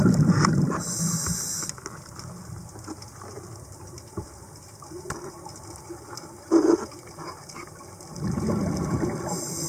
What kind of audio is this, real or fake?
real